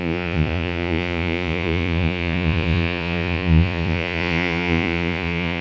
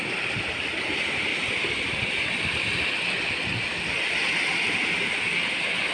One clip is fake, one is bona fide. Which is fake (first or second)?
first